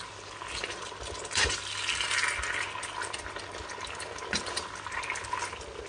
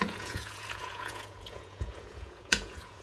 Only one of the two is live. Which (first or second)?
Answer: first